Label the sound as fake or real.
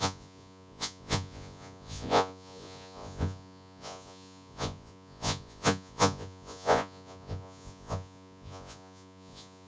fake